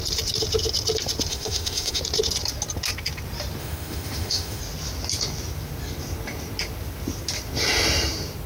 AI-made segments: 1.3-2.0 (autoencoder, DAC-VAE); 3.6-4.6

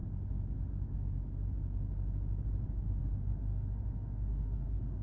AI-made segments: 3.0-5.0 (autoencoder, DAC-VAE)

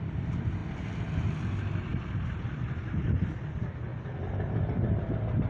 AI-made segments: none